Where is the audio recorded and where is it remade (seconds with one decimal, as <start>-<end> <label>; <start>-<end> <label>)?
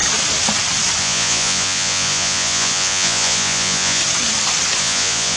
0.0-1.0 recorded; 1.0-4.0 remade; 4.0-4.8 recorded; 4.8-5.4 remade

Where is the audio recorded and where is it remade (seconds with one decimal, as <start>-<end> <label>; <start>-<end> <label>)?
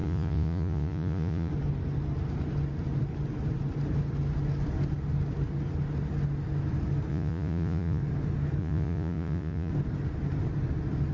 0.0-1.5 remade; 1.5-7.1 recorded; 7.1-8.0 remade; 8.0-8.6 recorded; 8.6-9.7 remade; 9.7-11.1 recorded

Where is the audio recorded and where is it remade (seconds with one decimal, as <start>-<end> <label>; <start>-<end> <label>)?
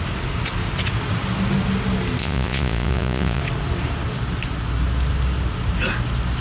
0.0-2.2 recorded; 2.2-3.4 remade; 3.4-6.4 recorded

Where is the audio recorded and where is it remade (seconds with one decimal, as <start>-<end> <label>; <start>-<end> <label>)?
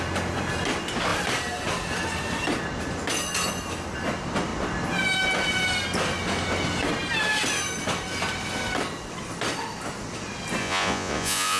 0.0-10.6 recorded; 10.6-11.6 remade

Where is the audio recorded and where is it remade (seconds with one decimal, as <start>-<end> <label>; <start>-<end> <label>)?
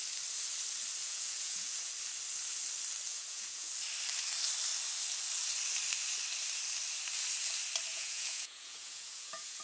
0.0-1.0 recorded; 1.0-1.9 remade; 1.9-3.1 recorded; 3.1-3.7 remade; 3.7-7.9 recorded; 7.9-9.6 remade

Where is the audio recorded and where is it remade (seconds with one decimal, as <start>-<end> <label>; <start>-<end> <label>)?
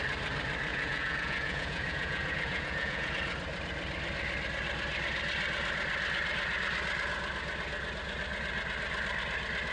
0.0-0.7 recorded; 0.7-3.1 remade; 3.1-9.7 recorded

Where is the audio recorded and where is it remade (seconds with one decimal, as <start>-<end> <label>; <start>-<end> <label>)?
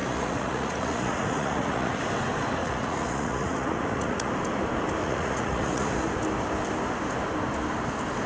0.0-2.0 remade; 2.0-2.6 recorded; 2.6-4.3 remade; 4.3-5.0 recorded; 5.0-6.1 remade; 6.1-8.3 recorded